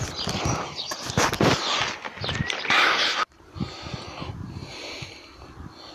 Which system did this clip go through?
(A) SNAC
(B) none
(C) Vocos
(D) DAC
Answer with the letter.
B